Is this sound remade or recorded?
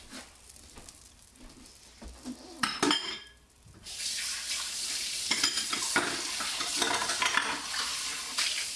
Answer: remade